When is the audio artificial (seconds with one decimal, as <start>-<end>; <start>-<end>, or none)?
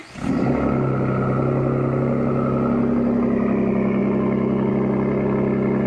none